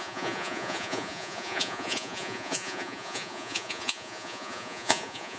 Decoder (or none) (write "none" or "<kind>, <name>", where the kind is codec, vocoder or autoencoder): vocoder, Vocos